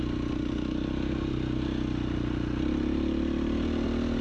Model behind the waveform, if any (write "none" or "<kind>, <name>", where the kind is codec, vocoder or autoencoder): none